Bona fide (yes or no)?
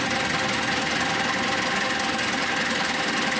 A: yes